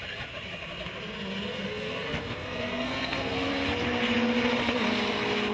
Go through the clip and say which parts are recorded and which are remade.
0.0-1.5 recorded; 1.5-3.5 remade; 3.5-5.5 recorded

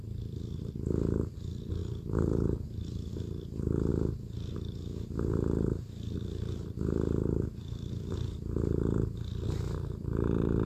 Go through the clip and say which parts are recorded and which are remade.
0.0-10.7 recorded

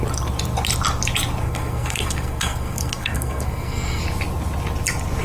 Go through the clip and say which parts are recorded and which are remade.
0.0-1.4 recorded; 1.4-4.0 remade; 4.0-5.2 recorded

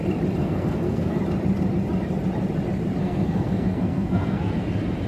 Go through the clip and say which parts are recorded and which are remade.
0.0-0.4 recorded; 0.4-1.2 remade; 1.2-3.0 recorded; 3.0-4.5 remade; 4.5-5.1 recorded

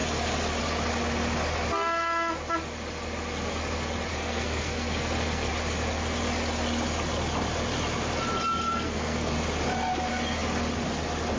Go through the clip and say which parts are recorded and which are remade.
0.0-4.1 recorded; 4.1-5.5 remade; 5.5-8.6 recorded; 8.6-9.3 remade; 9.3-11.4 recorded